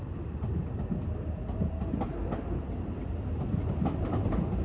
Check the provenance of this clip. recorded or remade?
recorded